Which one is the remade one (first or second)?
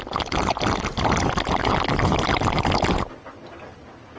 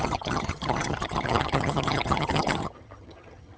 second